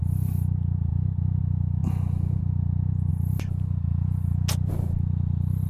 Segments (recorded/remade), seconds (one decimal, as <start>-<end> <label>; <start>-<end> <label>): 0.0-5.7 recorded